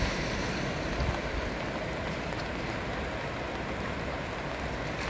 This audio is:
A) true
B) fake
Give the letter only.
A